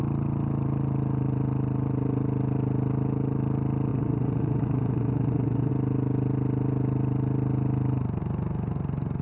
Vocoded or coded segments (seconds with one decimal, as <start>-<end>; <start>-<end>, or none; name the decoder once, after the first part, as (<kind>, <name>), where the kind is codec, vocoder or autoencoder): 3.9-5.7 (vocoder, Vocos)